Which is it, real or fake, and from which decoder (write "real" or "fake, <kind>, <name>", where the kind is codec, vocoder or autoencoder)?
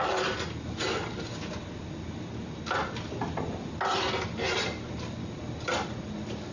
real